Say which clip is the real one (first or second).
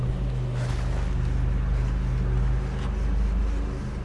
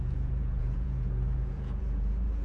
first